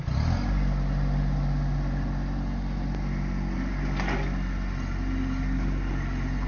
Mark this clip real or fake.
real